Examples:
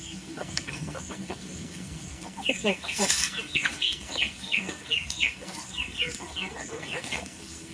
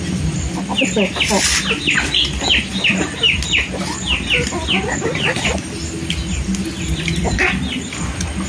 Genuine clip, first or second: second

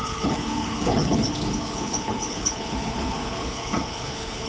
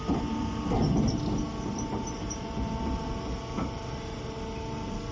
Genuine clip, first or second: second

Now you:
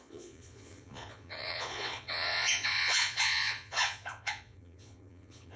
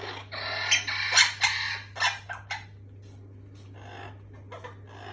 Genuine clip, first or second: second